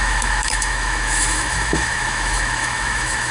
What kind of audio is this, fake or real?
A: fake